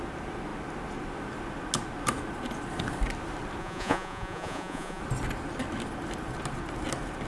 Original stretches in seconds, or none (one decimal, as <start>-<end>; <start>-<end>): 0.0-3.6; 5.0-7.3